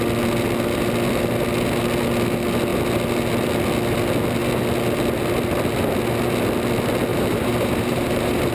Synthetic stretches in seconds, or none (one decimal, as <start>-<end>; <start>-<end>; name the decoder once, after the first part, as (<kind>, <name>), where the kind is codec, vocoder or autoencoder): 7.1-8.5 (vocoder, BigVGAN v2)